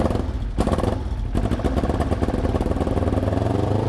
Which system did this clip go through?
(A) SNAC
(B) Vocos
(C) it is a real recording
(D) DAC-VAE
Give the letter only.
C